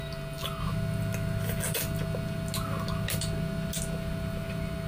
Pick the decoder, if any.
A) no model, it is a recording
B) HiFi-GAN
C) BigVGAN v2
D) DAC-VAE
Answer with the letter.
A